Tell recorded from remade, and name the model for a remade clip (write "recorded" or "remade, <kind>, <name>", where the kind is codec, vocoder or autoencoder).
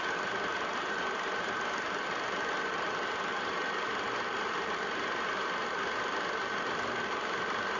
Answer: recorded